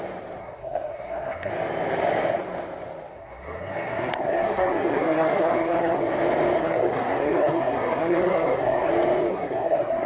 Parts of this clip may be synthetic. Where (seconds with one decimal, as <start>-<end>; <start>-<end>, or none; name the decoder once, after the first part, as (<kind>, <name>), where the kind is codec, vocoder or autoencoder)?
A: 0.4-1.5 (codec, SNAC); 3.1-6.0; 6.6-8.9; 9.3-10.1